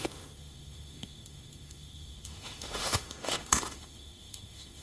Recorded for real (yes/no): no